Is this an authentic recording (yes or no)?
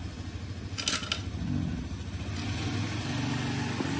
yes